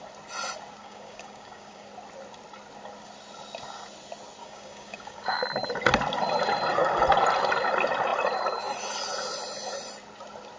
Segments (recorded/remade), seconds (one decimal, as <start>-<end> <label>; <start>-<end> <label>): 0.0-0.8 recorded; 0.8-1.9 remade; 1.9-4.4 recorded; 4.4-5.4 remade; 5.4-10.6 recorded